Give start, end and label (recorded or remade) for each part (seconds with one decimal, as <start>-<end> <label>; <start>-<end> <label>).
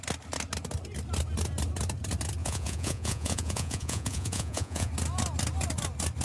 0.0-2.4 recorded; 2.4-4.9 remade; 4.9-6.2 recorded